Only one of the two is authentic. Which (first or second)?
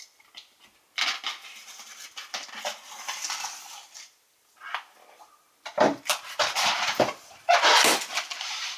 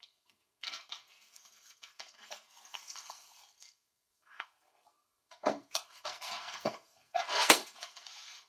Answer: first